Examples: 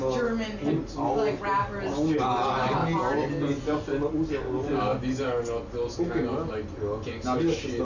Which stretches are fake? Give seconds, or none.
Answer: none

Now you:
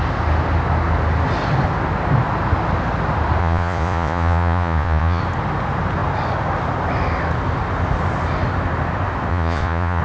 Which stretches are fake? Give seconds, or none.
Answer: 3.4-5.2 (vocoder, Vocos); 9.3-10.0

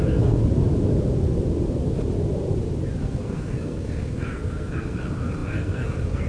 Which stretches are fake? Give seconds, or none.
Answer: 0.0-0.4 (codec, SNAC); 3.0-6.3

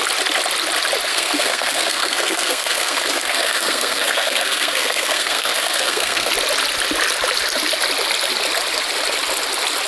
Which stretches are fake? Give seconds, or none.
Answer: 1.1-6.3 (codec, SNAC)

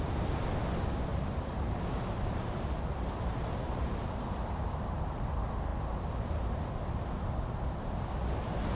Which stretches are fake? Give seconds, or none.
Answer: 1.1-4.7 (vocoder, BigVGAN v2)

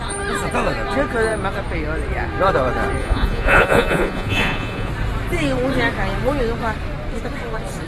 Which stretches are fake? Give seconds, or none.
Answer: 3.0-4.9 (vocoder, Vocos)